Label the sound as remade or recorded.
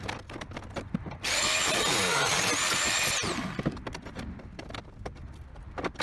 recorded